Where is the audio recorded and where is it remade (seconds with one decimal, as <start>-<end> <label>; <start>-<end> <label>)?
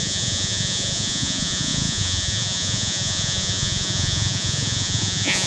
0.0-5.5 remade